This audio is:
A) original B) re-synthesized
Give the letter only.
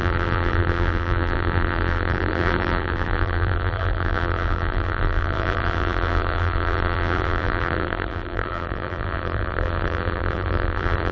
B